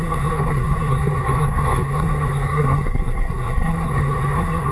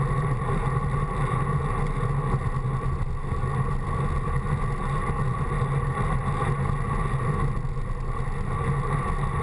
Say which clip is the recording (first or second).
second